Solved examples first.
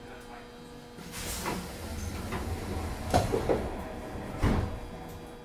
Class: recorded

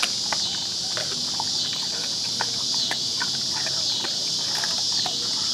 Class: recorded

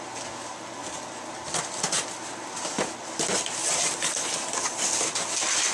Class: recorded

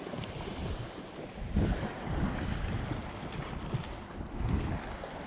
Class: recorded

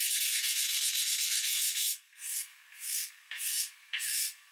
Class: remade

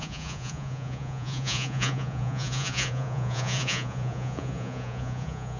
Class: remade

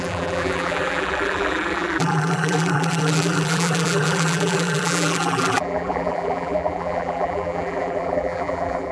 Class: remade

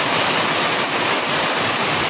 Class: recorded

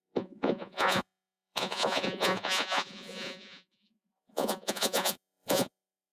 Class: remade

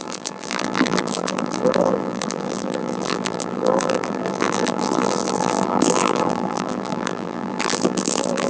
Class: remade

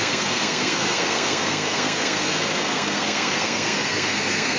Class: remade